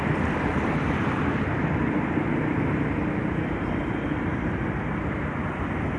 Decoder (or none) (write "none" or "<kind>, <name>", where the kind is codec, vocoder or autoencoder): none